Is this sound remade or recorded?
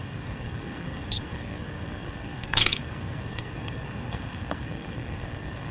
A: remade